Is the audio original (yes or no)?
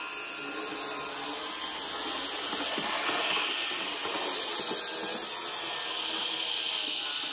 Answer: yes